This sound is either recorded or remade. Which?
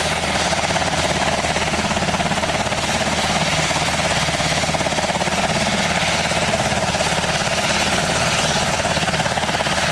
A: recorded